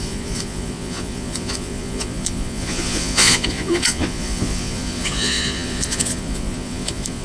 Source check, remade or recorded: remade